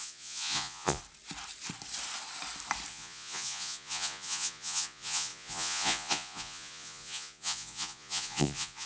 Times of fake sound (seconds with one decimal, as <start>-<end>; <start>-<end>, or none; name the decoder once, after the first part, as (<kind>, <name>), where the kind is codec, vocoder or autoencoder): 0.0-1.0 (vocoder, Vocos); 2.9-8.9